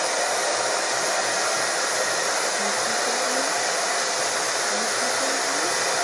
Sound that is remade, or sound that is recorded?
recorded